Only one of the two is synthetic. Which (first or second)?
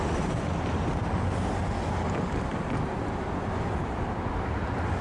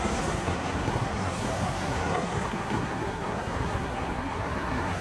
second